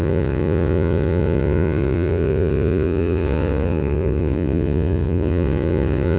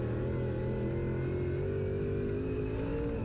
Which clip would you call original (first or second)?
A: second